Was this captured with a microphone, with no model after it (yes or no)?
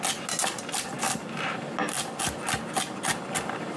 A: yes